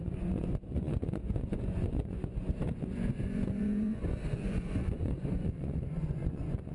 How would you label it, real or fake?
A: fake